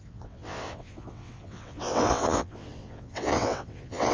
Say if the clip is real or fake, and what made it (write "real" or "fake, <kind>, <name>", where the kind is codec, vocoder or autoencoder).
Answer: fake, vocoder, WaveNeXt